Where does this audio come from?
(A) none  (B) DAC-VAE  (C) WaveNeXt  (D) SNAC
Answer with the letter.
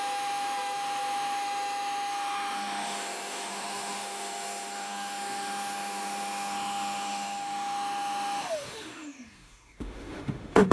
B